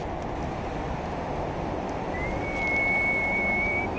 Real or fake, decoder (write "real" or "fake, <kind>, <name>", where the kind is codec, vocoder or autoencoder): real